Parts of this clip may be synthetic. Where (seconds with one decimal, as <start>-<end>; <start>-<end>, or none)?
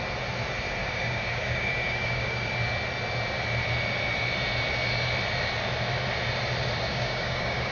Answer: 0.8-2.5; 6.9-7.7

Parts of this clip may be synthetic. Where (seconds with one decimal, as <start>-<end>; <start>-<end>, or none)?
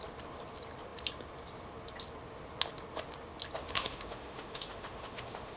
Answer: 3.6-5.6